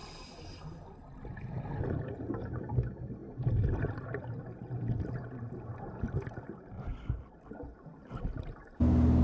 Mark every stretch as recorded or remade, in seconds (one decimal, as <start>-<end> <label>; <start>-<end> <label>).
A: 0.0-9.2 recorded